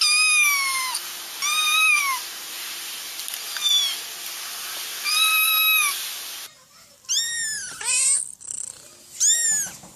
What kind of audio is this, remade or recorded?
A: recorded